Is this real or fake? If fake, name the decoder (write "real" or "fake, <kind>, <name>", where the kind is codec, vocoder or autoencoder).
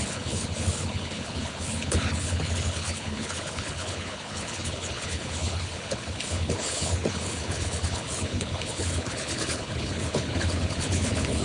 fake, codec, HILCodec